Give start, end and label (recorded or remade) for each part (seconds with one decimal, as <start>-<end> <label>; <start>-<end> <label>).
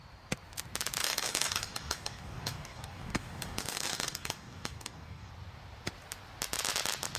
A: 0.0-1.0 recorded; 1.0-5.3 remade; 5.3-7.2 recorded